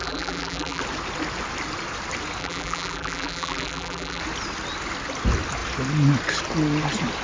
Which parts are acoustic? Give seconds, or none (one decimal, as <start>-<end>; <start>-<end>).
0.8-2.4; 4.2-7.2